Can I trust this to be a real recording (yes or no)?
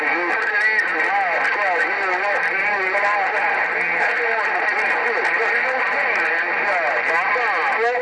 yes